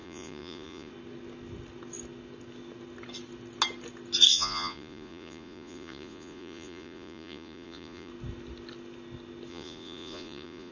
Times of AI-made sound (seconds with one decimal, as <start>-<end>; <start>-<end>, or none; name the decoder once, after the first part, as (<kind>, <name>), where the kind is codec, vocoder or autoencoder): 0.0-0.9 (vocoder, Vocos); 4.3-8.1; 9.5-10.7